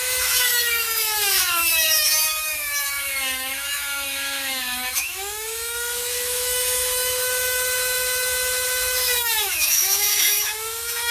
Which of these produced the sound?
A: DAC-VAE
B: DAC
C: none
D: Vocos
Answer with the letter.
A